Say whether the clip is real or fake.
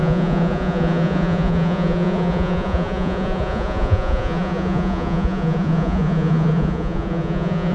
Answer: fake